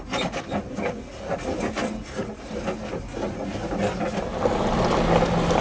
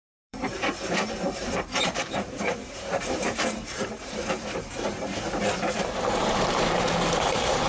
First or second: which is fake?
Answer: second